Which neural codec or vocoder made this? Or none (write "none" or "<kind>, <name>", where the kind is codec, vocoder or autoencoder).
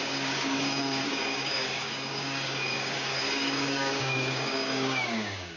codec, DAC